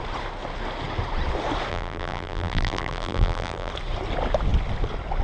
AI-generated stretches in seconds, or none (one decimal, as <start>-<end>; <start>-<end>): 1.7-3.7